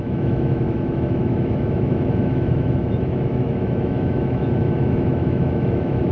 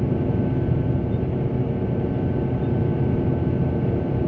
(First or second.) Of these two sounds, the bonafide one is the second